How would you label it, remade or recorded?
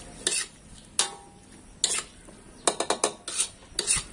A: recorded